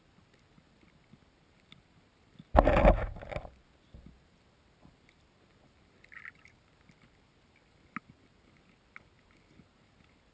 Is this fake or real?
real